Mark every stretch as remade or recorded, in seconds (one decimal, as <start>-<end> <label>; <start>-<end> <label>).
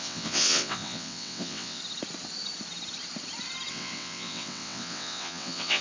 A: 0.0-1.8 remade; 1.8-3.7 recorded; 3.7-5.8 remade